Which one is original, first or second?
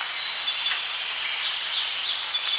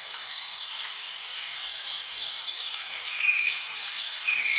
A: first